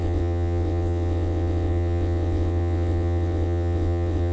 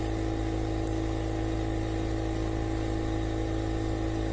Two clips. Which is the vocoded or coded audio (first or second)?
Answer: first